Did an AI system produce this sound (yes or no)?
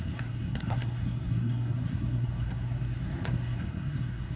yes